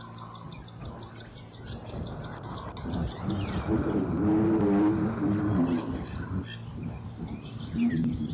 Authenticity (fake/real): real